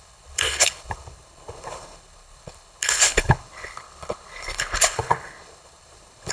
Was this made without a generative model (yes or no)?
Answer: no